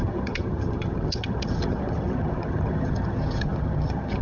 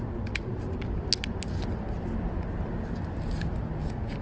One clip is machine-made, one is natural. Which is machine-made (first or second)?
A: first